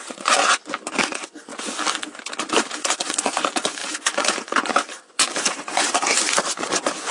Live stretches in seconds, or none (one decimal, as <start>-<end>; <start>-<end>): 0.4-1.0; 1.5-2.9